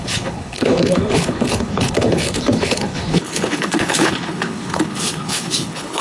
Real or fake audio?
fake